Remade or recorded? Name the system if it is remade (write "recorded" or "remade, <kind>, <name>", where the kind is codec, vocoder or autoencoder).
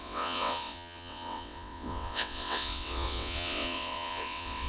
remade, vocoder, WaveNeXt